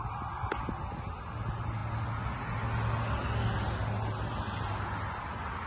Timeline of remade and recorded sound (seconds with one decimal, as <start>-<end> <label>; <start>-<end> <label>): 0.0-5.7 recorded